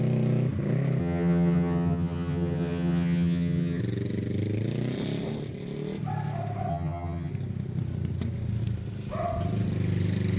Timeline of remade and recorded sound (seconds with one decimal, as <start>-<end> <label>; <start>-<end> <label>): 0.0-1.0 recorded; 1.0-3.8 remade; 3.8-6.7 recorded; 6.7-7.3 remade; 7.3-10.4 recorded